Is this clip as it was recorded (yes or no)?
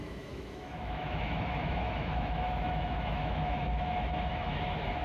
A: no